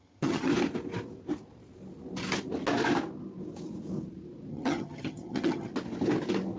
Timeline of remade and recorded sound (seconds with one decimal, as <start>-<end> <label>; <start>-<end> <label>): 0.0-0.5 remade; 0.5-4.5 recorded; 4.5-5.7 remade; 5.7-6.6 recorded